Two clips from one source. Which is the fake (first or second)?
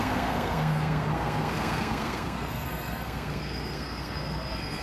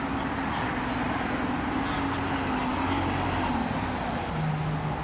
first